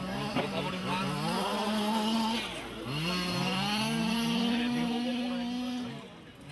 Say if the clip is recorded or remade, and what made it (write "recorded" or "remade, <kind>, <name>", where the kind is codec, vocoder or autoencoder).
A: recorded